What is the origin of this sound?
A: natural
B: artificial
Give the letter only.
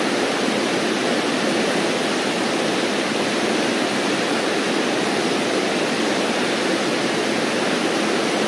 A